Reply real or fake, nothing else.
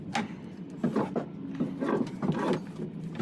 real